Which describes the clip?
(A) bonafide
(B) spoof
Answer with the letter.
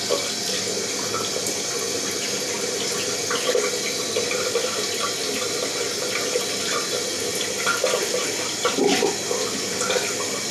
A